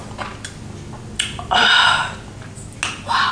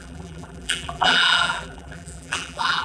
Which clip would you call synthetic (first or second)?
second